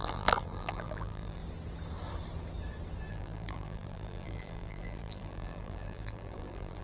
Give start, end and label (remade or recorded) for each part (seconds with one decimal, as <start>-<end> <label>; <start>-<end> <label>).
0.0-1.4 remade; 1.4-3.1 recorded; 3.1-6.8 remade